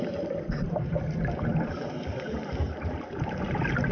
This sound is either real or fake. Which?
fake